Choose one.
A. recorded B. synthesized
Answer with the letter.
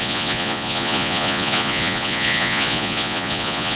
B